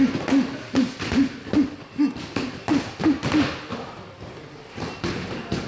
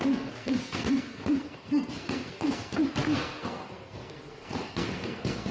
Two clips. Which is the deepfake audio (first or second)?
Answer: second